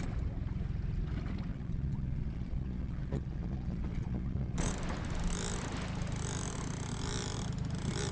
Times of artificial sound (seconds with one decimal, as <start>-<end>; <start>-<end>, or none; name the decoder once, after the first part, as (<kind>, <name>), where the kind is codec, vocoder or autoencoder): 1.5-4.7 (vocoder, Vocos)